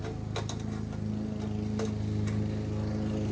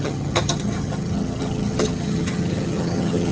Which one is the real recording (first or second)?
first